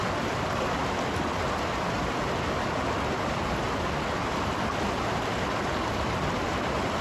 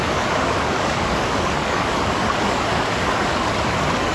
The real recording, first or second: first